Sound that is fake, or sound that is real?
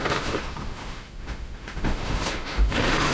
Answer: fake